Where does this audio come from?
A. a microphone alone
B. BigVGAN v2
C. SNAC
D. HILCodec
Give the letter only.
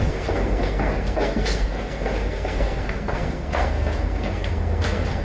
C